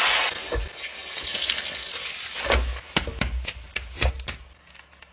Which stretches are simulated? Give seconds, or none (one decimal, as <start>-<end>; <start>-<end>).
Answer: 1.0-2.4